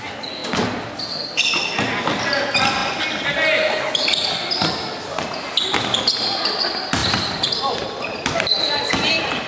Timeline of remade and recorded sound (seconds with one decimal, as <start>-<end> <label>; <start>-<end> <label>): 0.0-9.5 recorded